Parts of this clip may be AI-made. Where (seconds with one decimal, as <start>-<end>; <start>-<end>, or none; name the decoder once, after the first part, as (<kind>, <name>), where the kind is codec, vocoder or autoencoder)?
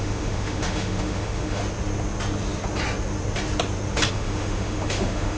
0.0-1.6 (autoencoder, DAC-VAE); 4.1-5.4